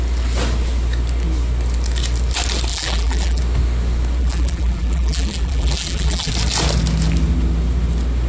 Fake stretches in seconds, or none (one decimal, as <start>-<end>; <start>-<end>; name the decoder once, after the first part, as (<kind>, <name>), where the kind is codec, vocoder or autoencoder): 2.7-3.4 (vocoder, BigVGAN v2); 4.2-6.3